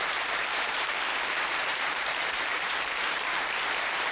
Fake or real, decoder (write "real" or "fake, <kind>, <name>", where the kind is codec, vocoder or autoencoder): fake, vocoder, BigVGAN v2